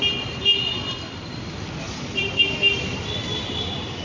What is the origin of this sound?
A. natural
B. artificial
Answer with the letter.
A